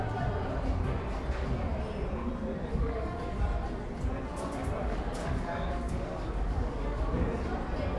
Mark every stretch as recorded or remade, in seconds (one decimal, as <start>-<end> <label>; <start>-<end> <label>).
0.0-2.7 recorded; 2.7-3.4 remade; 3.4-4.8 recorded; 4.8-7.3 remade; 7.3-8.0 recorded